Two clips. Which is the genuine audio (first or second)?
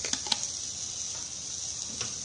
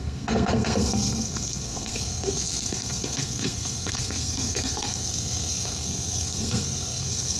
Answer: first